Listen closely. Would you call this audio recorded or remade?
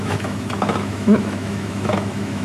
remade